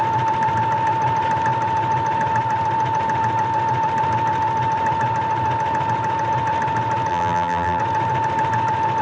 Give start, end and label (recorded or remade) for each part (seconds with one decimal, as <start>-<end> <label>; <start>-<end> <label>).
0.0-7.1 recorded; 7.1-7.8 remade; 7.8-9.0 recorded